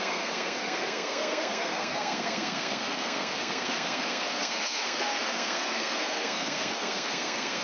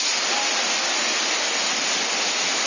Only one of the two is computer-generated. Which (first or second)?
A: first